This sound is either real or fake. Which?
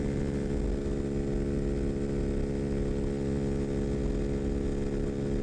real